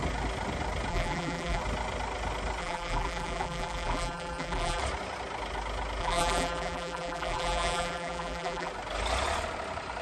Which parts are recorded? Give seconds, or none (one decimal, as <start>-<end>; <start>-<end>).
0.0-0.9; 1.6-2.6; 4.8-6.0; 8.7-10.0